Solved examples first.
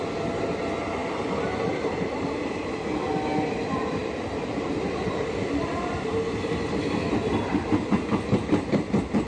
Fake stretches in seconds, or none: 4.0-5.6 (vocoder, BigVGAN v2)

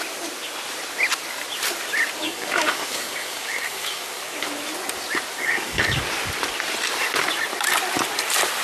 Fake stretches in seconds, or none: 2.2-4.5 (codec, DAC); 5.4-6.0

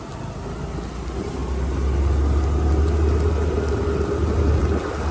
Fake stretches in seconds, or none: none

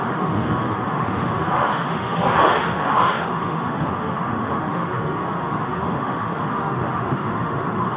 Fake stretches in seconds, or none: 0.0-8.0 (autoencoder, DAC-VAE)

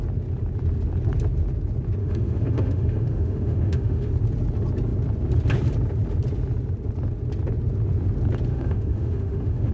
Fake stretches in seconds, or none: 2.0-4.1 (autoencoder, DAC-VAE); 8.5-9.7

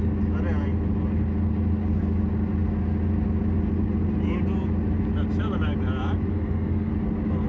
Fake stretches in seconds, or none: 6.3-6.9 (codec, SNAC)

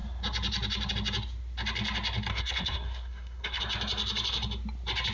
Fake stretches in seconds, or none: 2.3-3.6 (codec, SNAC)